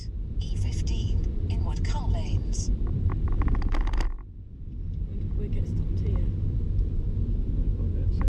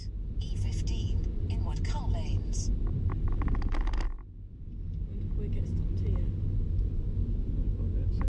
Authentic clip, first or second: second